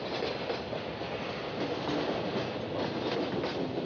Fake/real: real